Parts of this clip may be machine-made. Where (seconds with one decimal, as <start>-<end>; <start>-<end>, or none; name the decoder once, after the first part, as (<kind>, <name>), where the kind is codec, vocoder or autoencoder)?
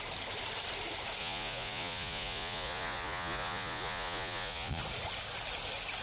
1.2-4.8 (vocoder, Vocos)